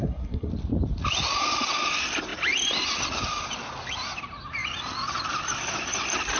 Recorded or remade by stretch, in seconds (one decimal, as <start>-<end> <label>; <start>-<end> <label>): 0.0-0.5 remade; 0.5-6.4 recorded